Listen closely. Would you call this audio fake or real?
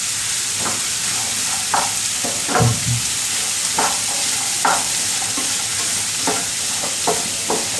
fake